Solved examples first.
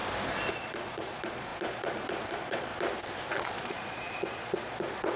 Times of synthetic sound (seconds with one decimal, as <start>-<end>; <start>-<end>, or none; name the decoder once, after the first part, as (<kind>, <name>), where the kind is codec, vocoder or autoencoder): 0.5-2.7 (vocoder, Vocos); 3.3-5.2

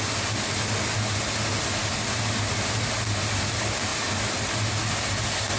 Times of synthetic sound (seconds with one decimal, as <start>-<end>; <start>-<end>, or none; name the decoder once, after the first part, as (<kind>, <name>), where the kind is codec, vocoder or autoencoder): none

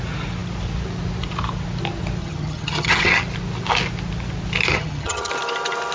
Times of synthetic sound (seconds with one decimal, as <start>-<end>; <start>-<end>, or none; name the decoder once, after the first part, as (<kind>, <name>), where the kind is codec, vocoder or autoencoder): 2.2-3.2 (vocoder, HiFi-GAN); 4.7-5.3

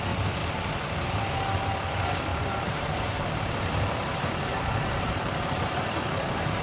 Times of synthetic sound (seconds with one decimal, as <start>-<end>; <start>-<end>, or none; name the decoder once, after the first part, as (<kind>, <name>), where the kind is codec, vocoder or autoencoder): 0.4-1.3 (vocoder, BigVGAN v2); 2.3-6.6

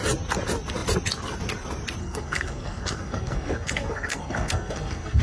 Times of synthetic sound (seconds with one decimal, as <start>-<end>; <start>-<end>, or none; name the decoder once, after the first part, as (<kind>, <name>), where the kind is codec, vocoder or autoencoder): 2.0-5.2 (codec, SNAC)

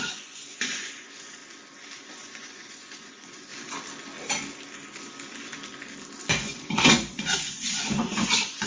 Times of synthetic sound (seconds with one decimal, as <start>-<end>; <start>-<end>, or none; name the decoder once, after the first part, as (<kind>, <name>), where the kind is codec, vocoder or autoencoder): 0.0-1.4 (vocoder, Vocos); 2.0-3.5; 6.3-8.7

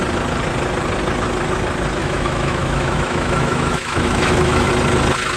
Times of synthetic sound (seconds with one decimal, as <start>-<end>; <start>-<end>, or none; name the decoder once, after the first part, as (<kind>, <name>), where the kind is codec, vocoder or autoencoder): 2.0-4.7 (autoencoder, DAC-VAE)

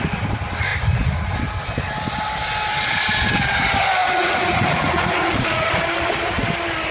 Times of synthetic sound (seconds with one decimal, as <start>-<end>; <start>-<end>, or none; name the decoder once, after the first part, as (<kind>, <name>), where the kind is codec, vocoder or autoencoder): 4.0-5.8 (vocoder, Vocos)